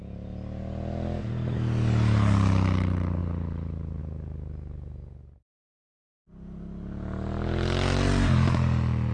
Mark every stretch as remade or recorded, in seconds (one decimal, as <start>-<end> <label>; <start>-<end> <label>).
0.0-9.1 recorded